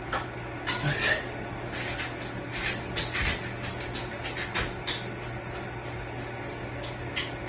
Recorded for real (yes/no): yes